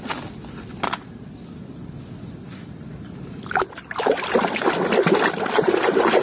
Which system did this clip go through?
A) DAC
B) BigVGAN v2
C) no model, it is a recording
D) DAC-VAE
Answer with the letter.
C